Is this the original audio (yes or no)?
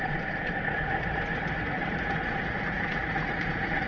no